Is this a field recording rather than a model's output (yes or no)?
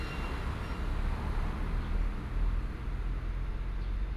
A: yes